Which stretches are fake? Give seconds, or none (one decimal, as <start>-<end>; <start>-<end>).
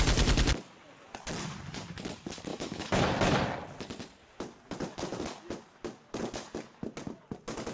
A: 2.5-3.0